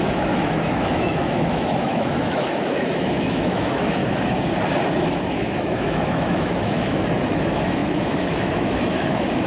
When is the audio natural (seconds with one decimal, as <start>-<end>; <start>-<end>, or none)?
4.0-4.9